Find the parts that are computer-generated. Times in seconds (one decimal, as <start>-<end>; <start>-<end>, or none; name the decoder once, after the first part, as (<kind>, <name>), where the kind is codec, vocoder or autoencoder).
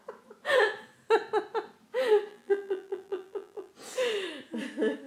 2.3-3.7 (vocoder, BigVGAN v2)